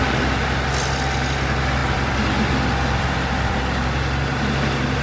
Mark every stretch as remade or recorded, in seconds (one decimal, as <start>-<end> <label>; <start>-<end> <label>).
0.0-1.8 recorded; 1.8-3.6 remade; 3.6-5.0 recorded